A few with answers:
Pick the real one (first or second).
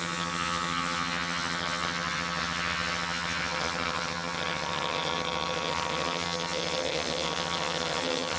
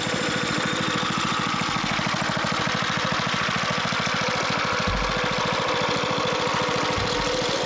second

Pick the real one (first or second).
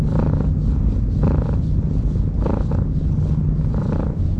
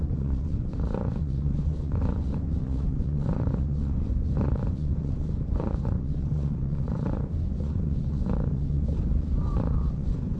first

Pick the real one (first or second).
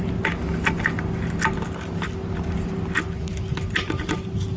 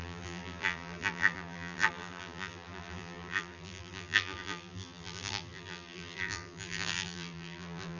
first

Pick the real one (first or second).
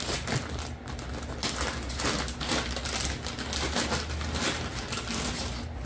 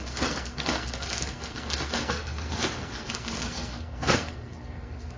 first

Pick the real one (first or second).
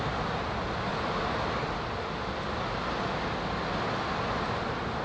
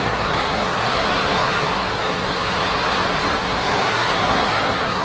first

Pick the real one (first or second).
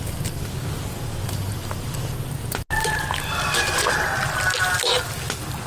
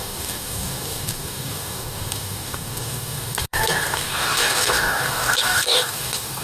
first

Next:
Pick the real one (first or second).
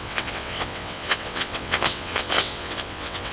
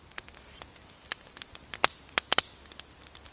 second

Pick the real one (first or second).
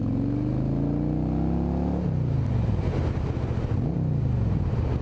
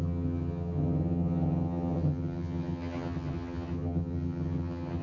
first